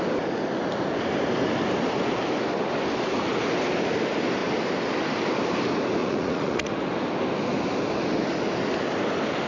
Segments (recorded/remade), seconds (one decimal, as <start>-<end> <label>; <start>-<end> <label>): 0.0-6.0 recorded; 6.0-6.7 remade; 6.7-9.5 recorded